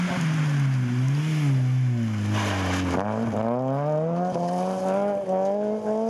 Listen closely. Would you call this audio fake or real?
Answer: real